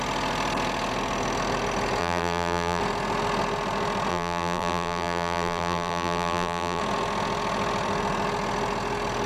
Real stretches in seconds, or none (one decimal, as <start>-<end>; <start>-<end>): 0.0-2.0; 2.8-4.1; 6.8-9.3